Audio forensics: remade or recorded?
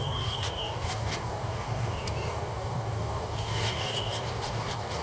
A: remade